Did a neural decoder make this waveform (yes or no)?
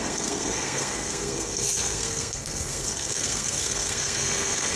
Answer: yes